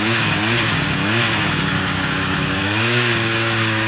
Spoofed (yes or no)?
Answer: yes